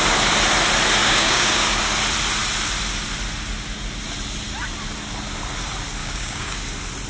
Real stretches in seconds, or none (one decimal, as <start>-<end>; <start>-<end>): 0.0-1.0; 1.8-6.0; 6.6-7.1